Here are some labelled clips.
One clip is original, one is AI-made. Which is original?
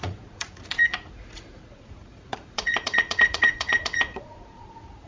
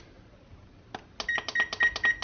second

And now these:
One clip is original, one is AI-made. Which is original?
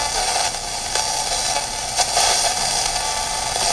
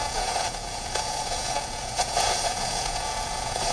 first